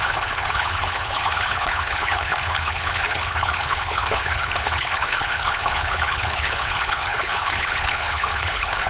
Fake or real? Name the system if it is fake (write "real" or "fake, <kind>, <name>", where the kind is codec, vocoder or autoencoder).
fake, codec, HILCodec